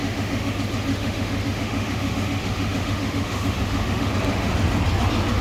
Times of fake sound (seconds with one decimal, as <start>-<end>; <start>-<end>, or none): 0.0-0.5; 0.9-4.1